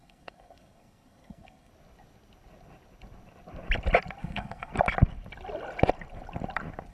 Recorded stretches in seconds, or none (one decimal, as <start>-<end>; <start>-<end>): 1.7-4.2; 4.7-6.9